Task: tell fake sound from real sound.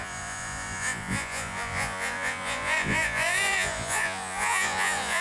fake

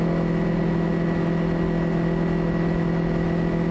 real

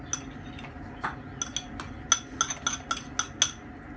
real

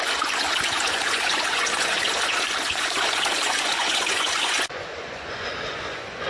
fake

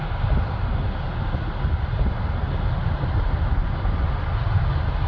real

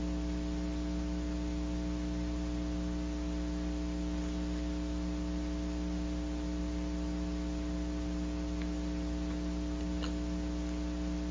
real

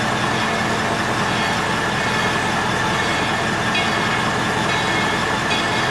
real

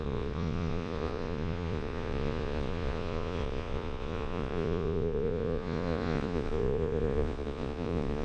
fake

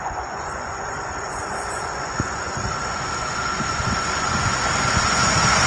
fake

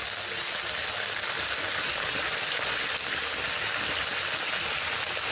real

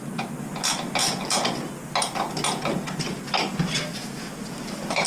real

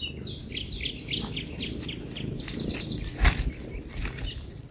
real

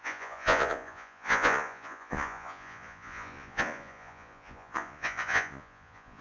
fake